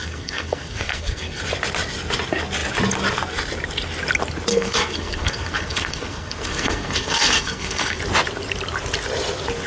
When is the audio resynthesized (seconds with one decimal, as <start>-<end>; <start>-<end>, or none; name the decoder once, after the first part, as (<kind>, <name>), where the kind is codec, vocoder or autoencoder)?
0.0-1.4 (codec, SNAC); 4.5-8.0

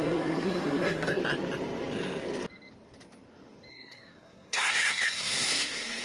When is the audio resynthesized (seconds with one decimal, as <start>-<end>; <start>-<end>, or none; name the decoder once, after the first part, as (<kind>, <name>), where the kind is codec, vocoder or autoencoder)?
0.0-1.2 (codec, SNAC); 3.7-6.0

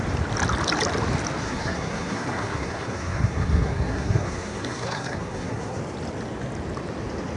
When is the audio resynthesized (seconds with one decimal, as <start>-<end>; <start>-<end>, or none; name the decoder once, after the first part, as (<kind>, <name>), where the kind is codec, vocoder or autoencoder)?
1.4-5.8 (codec, SNAC)

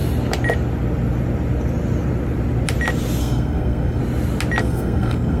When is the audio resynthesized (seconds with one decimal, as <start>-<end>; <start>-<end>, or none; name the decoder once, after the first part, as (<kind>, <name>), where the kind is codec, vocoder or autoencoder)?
3.2-4.0 (codec, SNAC); 4.6-5.4

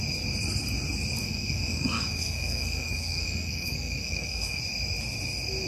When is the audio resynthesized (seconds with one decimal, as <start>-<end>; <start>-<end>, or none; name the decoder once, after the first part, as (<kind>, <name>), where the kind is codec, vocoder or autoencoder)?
1.2-4.6 (codec, SNAC)